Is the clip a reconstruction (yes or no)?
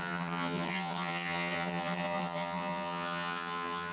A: yes